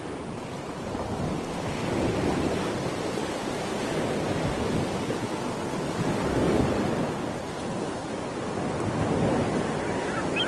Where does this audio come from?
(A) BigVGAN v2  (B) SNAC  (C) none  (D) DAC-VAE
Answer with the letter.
C